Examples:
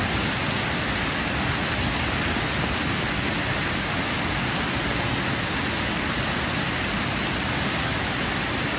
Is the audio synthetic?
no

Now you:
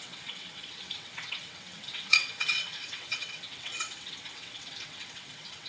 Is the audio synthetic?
yes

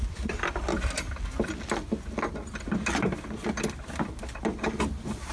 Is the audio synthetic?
no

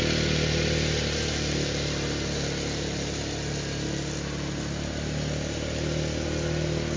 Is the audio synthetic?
no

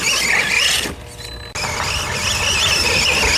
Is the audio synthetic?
no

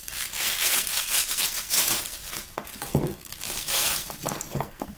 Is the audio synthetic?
yes